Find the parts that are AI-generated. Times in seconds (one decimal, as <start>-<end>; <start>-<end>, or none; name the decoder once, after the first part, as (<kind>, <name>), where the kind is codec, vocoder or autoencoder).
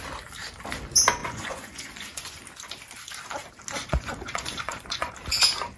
1.2-2.4 (vocoder, Vocos); 3.8-5.1